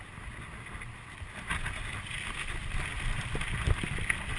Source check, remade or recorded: recorded